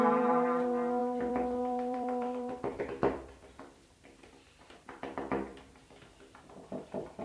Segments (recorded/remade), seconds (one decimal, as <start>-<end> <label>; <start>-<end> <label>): 0.0-7.2 remade